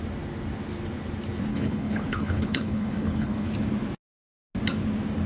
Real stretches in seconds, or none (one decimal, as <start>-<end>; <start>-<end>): 0.0-1.5; 3.5-5.3